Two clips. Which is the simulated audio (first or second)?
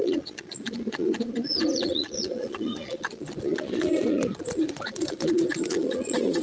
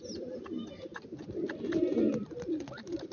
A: first